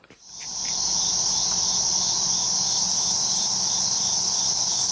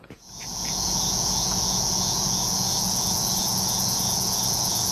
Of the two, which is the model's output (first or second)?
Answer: second